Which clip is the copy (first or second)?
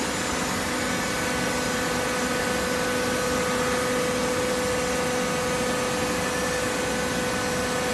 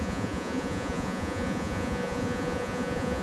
second